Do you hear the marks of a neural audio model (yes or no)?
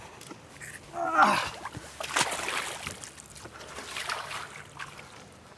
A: no